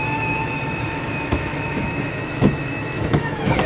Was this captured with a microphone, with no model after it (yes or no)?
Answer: no